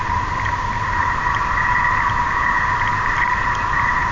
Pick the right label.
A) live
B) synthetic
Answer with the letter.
A